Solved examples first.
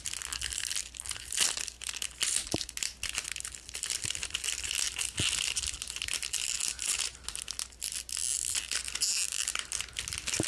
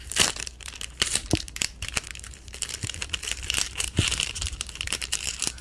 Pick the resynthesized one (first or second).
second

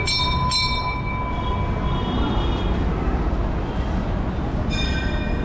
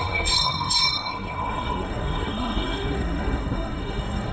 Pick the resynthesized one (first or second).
second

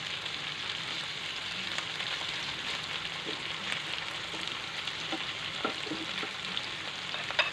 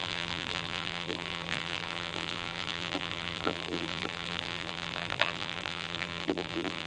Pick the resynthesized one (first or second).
second